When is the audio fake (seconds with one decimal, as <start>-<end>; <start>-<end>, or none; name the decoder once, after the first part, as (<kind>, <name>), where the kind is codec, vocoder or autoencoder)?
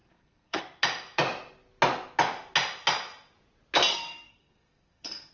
0.0-0.6 (codec, SNAC); 3.9-5.3